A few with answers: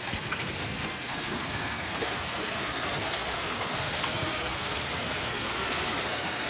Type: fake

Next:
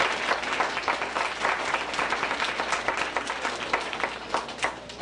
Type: real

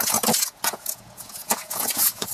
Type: fake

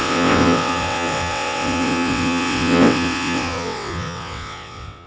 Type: fake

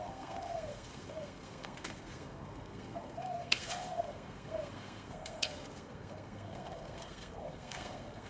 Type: fake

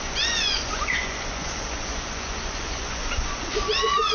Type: fake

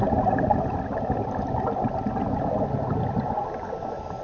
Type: real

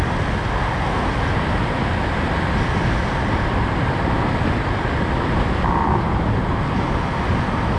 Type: real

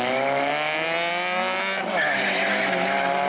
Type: real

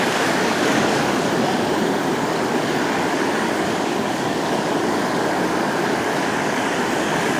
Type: fake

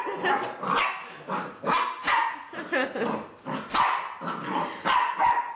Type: real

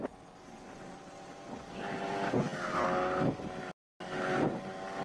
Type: real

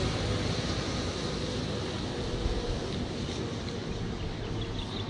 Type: real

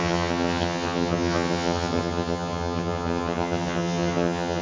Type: fake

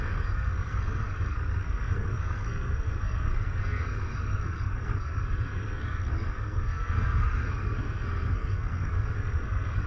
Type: fake